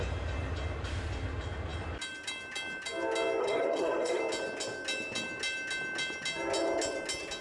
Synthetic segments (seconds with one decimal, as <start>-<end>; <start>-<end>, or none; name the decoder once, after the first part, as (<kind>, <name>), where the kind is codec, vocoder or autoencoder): 3.4-4.2 (codec, SNAC)